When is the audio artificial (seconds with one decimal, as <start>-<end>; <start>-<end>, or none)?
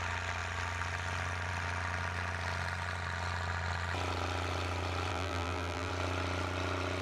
5.1-5.9